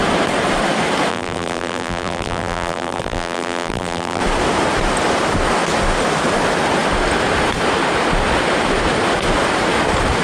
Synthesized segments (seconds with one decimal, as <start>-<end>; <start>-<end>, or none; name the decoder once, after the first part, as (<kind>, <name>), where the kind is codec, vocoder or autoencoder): 1.1-4.2 (vocoder, BigVGAN v2)